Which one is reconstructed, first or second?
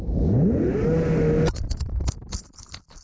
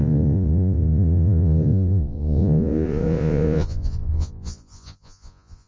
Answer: second